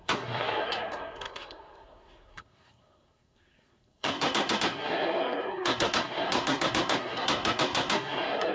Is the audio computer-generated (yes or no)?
yes